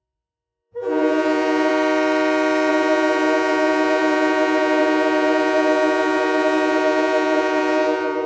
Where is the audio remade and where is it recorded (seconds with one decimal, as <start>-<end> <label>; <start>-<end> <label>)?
0.0-1.7 remade; 1.7-2.7 recorded; 2.7-8.3 remade